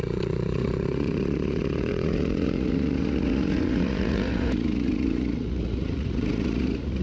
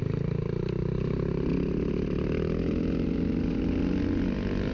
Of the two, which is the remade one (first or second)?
first